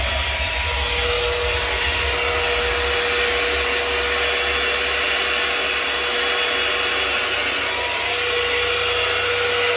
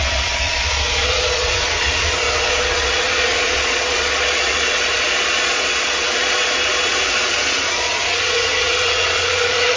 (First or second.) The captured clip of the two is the first